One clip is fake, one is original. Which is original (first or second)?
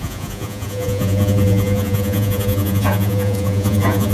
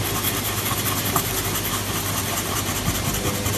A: second